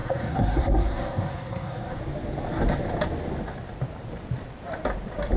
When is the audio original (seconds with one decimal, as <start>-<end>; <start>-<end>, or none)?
2.0-5.4